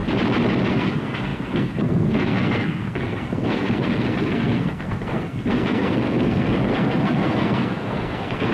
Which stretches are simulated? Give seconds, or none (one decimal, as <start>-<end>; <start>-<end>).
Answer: 0.7-8.5